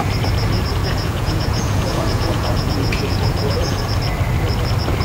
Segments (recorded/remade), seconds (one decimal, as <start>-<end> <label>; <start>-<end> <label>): 0.0-0.8 recorded; 0.8-3.8 remade; 3.8-5.0 recorded